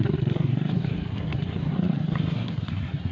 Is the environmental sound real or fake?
fake